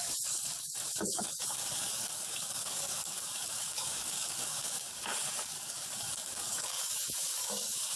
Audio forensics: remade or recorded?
remade